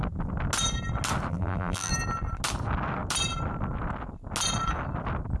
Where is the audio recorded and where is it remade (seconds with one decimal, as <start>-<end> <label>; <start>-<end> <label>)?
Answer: 0.0-1.3 recorded; 1.3-1.9 remade; 1.9-5.4 recorded